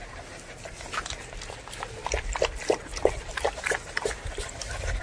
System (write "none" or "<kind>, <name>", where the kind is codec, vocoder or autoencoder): none